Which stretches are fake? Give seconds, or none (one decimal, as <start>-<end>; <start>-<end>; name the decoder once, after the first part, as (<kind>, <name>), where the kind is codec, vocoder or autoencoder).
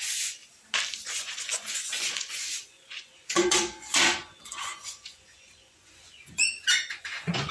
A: 0.0-0.4 (vocoder, Vocos); 1.1-7.5